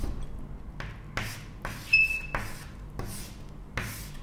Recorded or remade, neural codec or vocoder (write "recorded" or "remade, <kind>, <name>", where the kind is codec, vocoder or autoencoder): recorded